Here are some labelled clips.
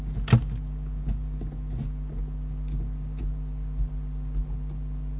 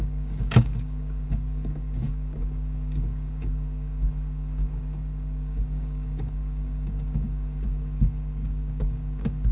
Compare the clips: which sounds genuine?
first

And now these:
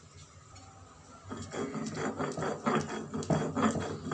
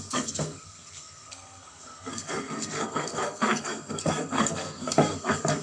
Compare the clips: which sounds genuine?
first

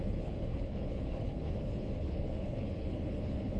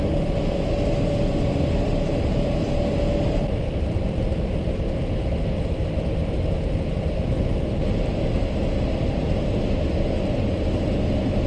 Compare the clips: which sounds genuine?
second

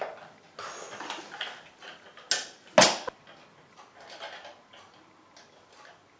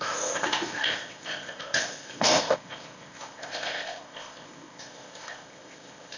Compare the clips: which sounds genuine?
first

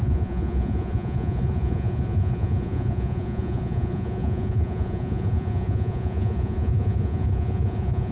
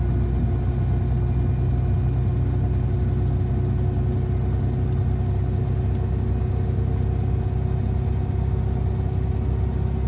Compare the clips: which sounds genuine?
second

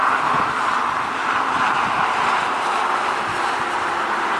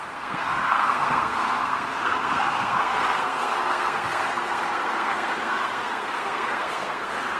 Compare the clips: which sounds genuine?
first